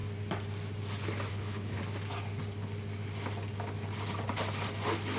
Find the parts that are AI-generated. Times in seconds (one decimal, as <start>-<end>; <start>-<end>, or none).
1.3-1.8

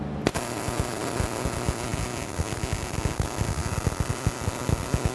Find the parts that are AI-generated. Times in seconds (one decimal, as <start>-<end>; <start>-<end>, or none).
none

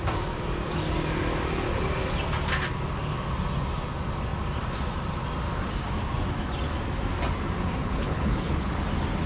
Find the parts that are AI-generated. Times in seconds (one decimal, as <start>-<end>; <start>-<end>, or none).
7.8-8.7

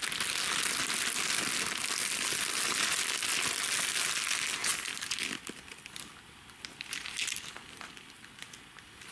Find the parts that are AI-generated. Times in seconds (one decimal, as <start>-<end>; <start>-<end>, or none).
none

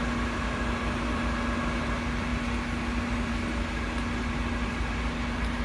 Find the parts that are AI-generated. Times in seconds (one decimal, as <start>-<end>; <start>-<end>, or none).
none